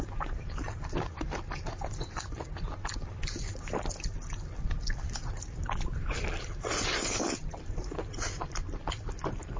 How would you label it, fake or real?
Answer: fake